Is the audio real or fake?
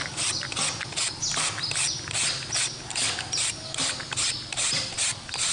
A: real